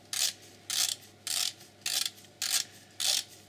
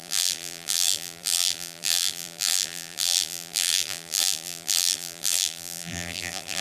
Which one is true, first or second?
first